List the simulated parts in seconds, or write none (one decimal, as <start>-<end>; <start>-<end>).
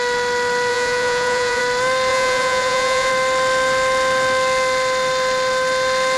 0.7-1.6; 2.1-3.1